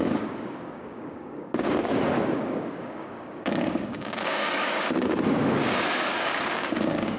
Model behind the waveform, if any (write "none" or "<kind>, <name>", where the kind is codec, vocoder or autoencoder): codec, DAC